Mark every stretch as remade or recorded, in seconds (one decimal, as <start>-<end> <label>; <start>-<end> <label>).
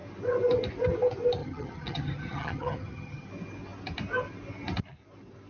0.0-1.4 recorded; 1.4-3.3 remade; 3.3-5.5 recorded